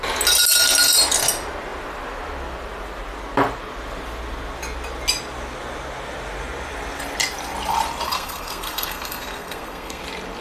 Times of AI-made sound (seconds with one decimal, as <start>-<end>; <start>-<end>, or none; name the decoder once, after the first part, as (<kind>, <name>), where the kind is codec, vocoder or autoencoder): 8.1-10.0 (codec, SNAC)